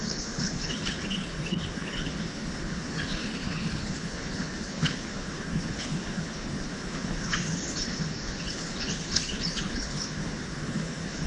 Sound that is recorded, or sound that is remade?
remade